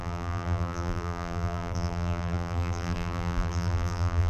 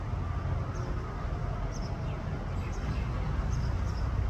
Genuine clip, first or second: second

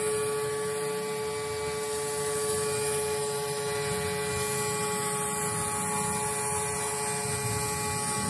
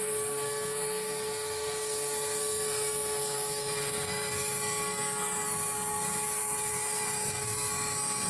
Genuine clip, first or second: first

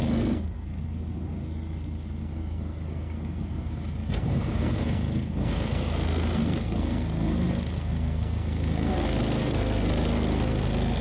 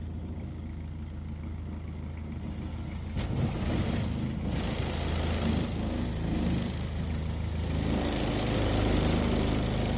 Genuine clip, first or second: second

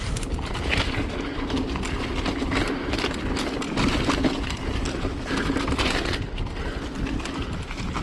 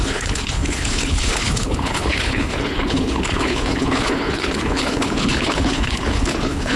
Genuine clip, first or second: first